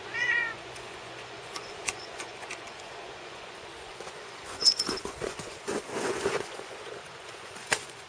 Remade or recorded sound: remade